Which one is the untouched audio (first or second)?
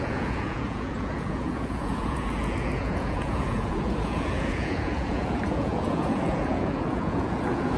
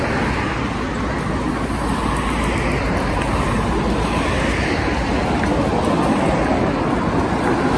second